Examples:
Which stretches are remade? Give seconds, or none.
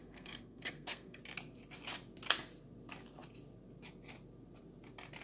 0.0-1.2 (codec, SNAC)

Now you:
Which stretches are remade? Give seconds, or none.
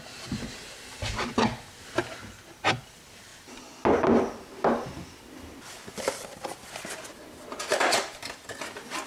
none